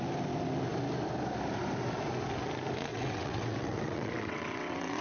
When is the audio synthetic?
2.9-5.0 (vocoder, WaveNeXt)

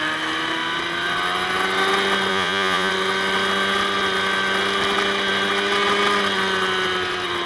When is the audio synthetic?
2.3-2.9 (vocoder, Vocos)